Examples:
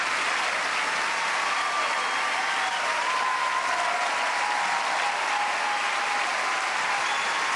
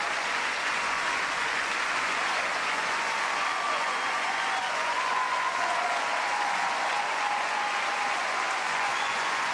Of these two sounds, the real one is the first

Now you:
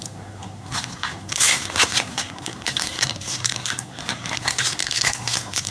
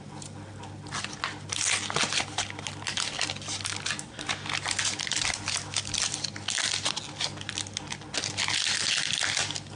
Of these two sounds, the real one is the second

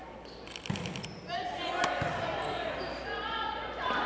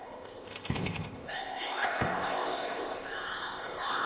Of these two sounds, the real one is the first